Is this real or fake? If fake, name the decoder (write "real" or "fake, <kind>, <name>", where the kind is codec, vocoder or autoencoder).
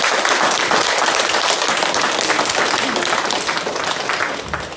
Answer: real